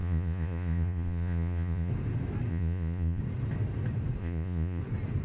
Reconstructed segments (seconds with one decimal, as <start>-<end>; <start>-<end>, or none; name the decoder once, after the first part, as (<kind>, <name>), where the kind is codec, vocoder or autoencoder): 0.0-1.9 (vocoder, Vocos); 2.5-3.2; 4.2-4.8